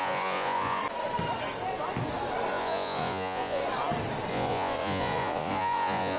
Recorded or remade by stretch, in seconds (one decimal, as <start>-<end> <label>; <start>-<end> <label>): 0.0-0.8 remade; 0.8-2.5 recorded; 2.5-3.6 remade; 3.6-4.3 recorded; 4.3-6.2 remade